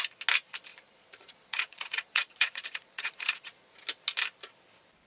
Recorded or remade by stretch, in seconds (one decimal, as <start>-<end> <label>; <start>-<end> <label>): 0.0-0.7 recorded; 0.7-3.8 remade; 3.8-5.1 recorded